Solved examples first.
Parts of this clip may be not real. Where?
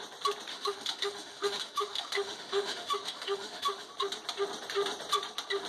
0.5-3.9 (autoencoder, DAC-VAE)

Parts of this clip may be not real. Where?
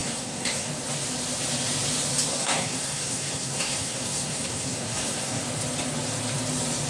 0.0-0.7 (codec, SNAC); 2.3-5.4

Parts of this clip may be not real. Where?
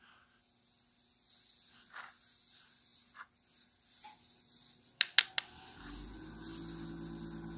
none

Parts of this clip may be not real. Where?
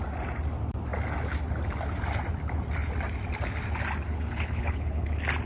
4.1-5.1 (codec, HILCodec)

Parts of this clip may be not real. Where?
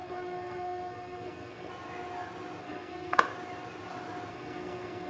0.0-1.7 (codec, SNAC); 2.6-3.2; 4.3-5.1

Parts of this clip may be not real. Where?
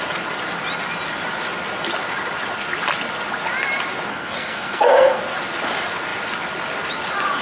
4.1-5.2 (codec, SNAC)